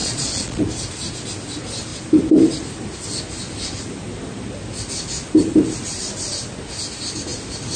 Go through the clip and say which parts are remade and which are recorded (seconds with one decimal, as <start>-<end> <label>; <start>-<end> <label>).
0.0-0.6 remade; 0.6-7.8 recorded